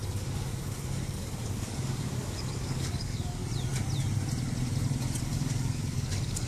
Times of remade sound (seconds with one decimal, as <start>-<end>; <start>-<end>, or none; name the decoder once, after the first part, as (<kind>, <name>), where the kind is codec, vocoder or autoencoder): 0.0-3.4 (codec, DAC); 5.2-6.5